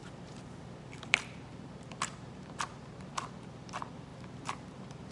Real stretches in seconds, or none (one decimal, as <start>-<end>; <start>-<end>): 3.1-4.1